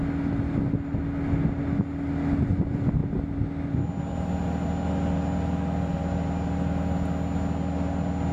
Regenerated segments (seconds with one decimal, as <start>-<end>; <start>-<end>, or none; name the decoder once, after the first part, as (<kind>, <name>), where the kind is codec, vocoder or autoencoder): none